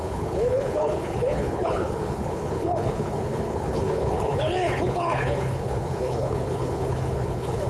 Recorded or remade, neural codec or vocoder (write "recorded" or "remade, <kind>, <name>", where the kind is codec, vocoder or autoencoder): remade, codec, HILCodec